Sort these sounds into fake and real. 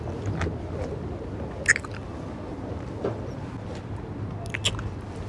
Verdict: real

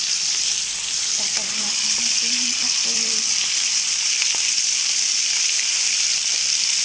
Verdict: fake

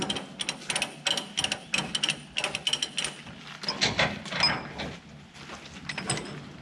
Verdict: real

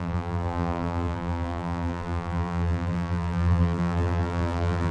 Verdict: fake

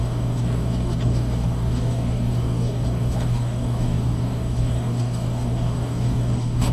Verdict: fake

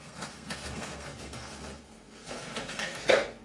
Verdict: fake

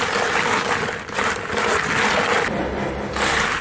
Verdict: real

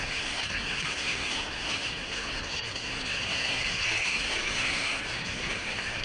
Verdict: fake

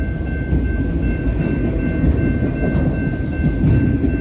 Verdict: real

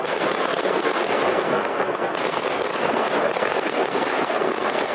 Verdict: fake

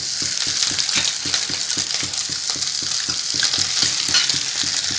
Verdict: real